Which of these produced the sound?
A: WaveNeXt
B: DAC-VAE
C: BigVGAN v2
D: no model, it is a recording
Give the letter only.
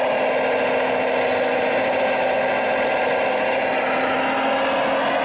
D